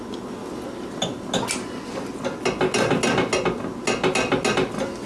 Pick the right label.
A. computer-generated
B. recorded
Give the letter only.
B